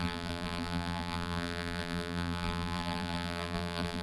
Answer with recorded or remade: remade